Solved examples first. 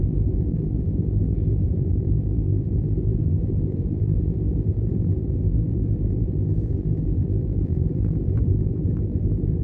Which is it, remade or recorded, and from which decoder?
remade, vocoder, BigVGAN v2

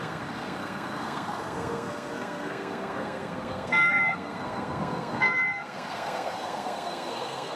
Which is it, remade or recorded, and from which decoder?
remade, codec, SNAC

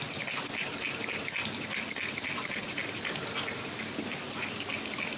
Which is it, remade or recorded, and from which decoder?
recorded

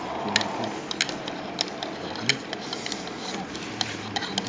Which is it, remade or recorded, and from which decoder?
recorded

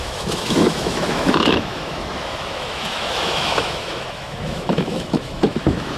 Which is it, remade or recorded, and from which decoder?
remade, autoencoder, DAC-VAE